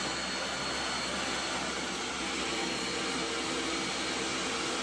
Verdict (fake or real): real